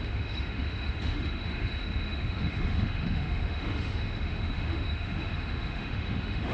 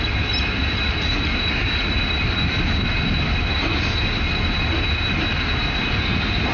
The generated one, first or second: first